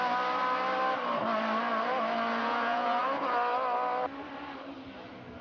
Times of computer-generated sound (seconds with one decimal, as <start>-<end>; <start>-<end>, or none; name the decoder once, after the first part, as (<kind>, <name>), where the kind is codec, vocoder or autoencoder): 2.4-3.0 (vocoder, Vocos)